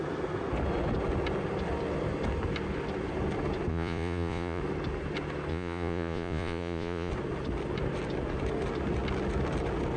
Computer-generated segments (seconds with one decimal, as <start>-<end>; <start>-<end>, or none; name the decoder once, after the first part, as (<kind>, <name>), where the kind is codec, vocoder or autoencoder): 3.7-4.6 (vocoder, Vocos); 5.5-7.1